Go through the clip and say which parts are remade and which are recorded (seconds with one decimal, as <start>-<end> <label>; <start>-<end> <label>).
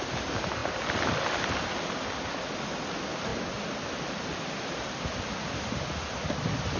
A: 0.0-6.8 recorded